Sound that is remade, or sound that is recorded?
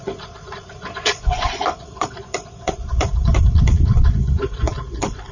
remade